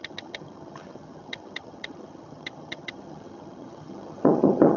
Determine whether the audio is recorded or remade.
remade